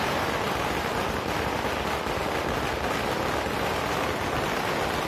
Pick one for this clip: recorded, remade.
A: recorded